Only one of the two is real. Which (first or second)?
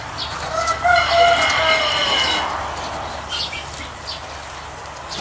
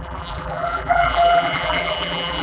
first